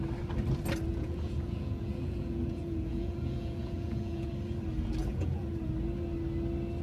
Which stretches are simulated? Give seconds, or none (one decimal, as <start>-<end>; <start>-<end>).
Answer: 0.9-4.3; 5.0-5.7